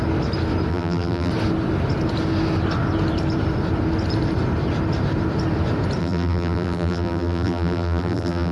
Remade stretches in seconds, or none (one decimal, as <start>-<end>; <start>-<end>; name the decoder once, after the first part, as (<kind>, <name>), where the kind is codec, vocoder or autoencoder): 0.7-1.3 (vocoder, BigVGAN v2); 6.0-8.5